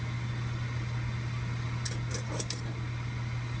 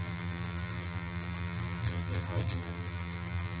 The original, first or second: first